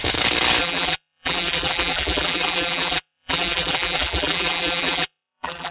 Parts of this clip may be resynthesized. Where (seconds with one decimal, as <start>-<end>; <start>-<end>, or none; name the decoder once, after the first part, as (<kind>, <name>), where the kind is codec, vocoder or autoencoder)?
0.6-5.7 (vocoder, BigVGAN v2)